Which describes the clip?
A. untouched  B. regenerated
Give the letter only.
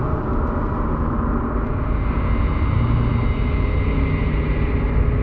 A